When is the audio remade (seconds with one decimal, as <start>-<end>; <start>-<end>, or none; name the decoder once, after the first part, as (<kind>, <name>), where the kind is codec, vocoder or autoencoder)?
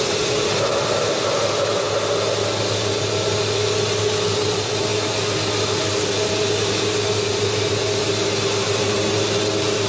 none